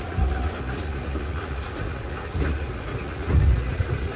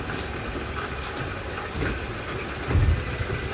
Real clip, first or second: second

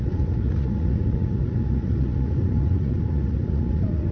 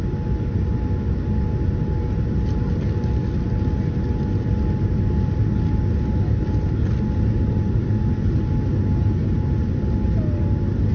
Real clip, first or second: second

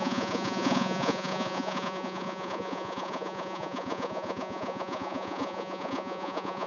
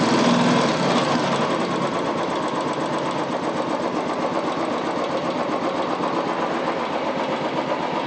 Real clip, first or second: second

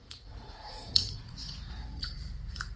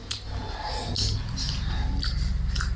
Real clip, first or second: second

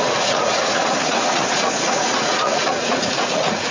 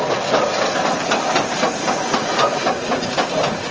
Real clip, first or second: second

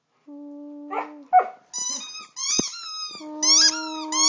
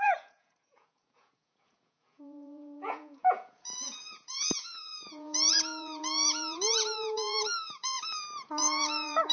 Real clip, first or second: first